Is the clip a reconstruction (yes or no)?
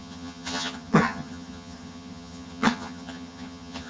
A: yes